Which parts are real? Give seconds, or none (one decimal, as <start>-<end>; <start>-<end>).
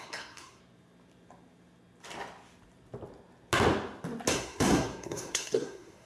0.6-4.3